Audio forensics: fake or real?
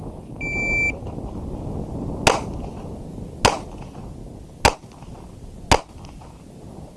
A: real